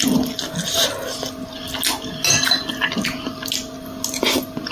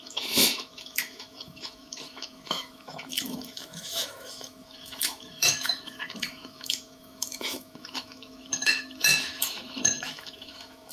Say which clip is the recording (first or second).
first